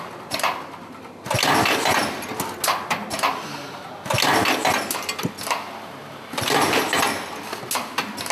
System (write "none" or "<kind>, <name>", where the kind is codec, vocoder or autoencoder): none